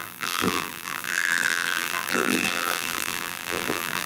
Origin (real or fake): fake